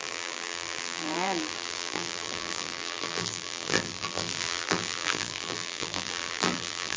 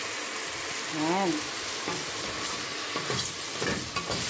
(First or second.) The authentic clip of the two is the second